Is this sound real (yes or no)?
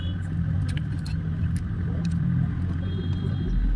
yes